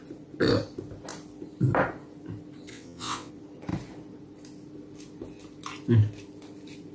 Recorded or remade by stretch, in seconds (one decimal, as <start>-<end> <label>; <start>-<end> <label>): 0.0-2.7 recorded; 2.7-3.3 remade; 3.3-6.9 recorded